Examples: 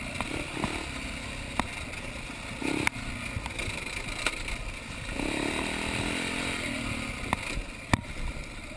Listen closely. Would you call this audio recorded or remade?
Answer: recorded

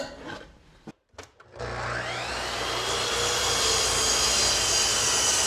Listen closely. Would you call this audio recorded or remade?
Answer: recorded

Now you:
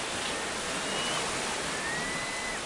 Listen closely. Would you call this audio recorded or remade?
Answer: recorded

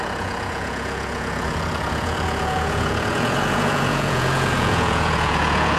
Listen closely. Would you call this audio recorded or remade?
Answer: remade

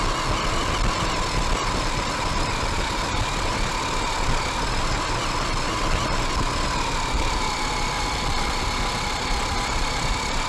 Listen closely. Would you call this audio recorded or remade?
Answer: recorded